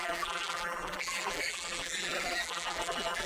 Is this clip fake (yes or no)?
yes